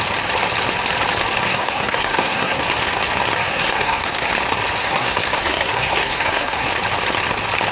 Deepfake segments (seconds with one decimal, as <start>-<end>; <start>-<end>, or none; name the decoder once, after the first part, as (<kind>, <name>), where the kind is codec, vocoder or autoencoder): 1.5-2.6 (codec, SNAC); 3.4-4.3; 4.8-6.7